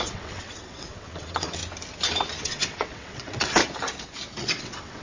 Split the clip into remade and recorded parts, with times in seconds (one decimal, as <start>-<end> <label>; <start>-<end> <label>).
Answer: 0.0-1.6 remade; 1.6-2.4 recorded; 2.4-3.6 remade; 3.6-4.4 recorded; 4.4-5.0 remade